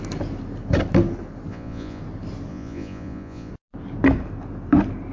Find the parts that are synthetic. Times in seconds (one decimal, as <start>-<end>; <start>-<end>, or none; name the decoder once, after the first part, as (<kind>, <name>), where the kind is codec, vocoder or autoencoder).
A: 1.5-2.0 (vocoder, Vocos); 2.5-3.5